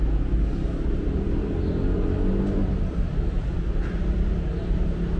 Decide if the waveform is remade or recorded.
recorded